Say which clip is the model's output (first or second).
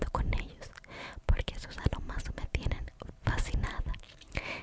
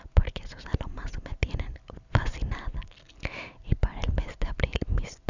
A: first